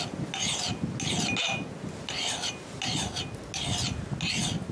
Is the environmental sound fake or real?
real